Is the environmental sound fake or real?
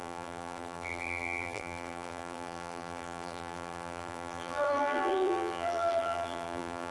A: fake